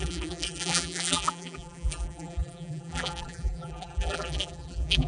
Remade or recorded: remade